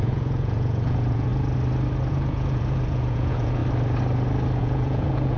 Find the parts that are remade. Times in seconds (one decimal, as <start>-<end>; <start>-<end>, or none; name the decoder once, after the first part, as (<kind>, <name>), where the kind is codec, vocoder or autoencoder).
0.0-1.3 (vocoder, Vocos); 2.1-3.6; 4.6-5.4